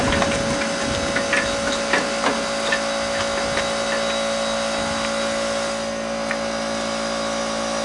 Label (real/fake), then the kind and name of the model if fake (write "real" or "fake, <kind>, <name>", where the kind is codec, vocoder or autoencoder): real